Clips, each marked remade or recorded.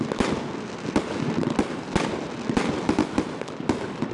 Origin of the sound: recorded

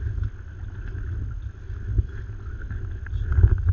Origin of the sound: recorded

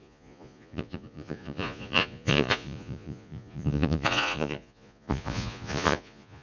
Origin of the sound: remade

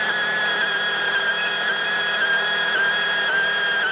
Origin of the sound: recorded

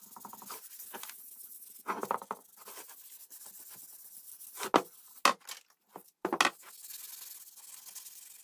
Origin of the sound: recorded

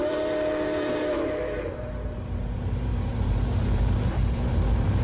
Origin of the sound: remade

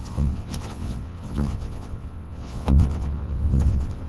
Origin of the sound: remade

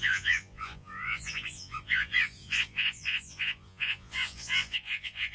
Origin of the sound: remade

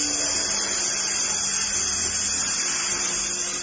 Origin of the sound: recorded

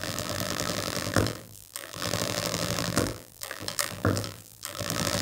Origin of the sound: remade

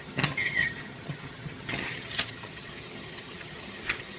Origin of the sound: remade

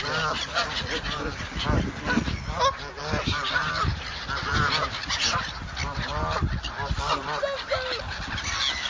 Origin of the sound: recorded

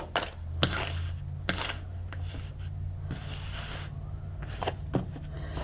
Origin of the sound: recorded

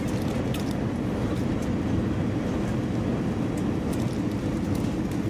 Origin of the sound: recorded